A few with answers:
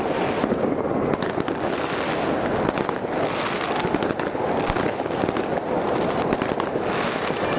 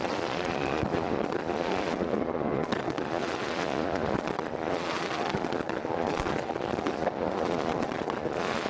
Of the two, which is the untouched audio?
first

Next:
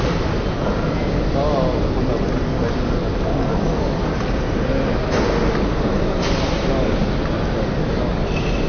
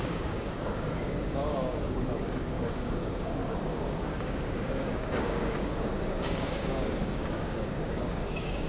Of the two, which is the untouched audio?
first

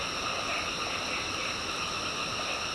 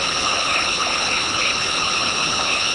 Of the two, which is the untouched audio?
first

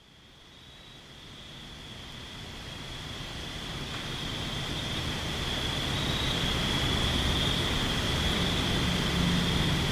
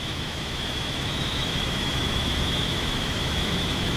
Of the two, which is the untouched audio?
first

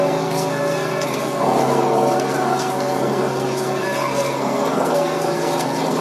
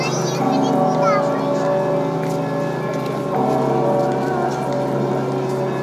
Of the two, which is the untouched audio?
second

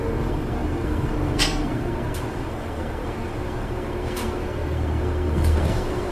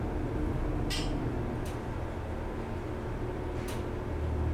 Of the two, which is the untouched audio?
second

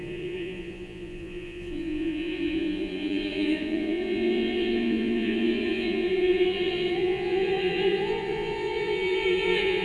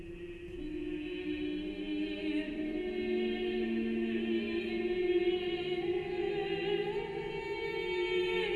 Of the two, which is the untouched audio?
second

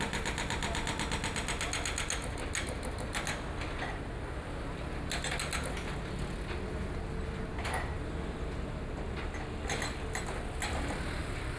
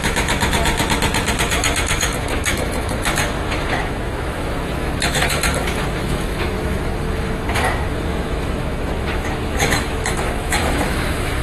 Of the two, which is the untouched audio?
first